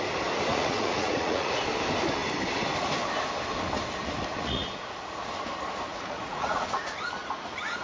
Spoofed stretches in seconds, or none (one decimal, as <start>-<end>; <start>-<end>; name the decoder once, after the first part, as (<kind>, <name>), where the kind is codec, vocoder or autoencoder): 0.5-1.5 (vocoder, Vocos); 4.3-5.2; 5.9-7.8